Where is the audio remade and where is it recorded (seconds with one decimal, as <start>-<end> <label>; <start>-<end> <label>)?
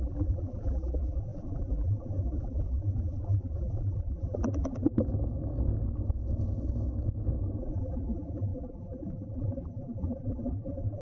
0.0-4.9 remade; 4.9-7.6 recorded; 7.6-11.0 remade